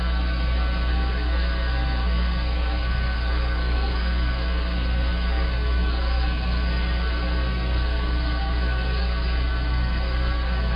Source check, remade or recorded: remade